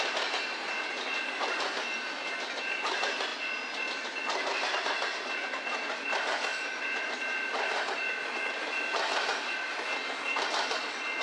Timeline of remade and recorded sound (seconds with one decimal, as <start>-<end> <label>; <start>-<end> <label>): 0.0-11.2 recorded